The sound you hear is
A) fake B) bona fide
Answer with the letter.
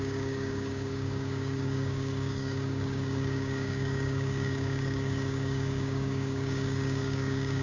A